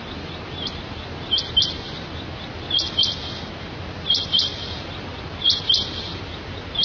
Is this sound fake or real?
real